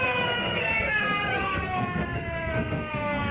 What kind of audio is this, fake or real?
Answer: fake